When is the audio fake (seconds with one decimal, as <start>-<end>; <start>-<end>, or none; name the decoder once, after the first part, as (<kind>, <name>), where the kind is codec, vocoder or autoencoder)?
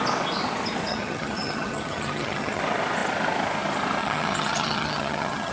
0.9-2.6 (vocoder, HiFi-GAN); 4.0-5.5